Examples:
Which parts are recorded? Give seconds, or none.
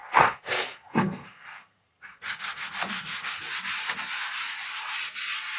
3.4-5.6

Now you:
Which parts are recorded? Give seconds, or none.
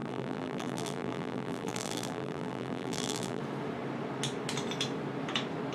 3.4-5.7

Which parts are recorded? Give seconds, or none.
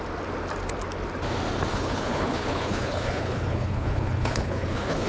0.0-1.7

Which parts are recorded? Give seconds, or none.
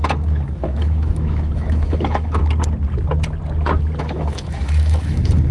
2.4-4.0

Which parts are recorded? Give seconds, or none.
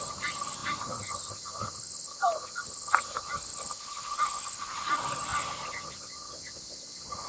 0.0-7.3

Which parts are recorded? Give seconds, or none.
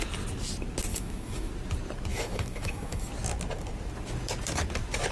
0.0-0.9; 1.5-2.1; 3.1-5.1